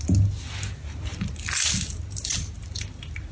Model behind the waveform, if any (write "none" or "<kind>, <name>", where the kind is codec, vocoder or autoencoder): none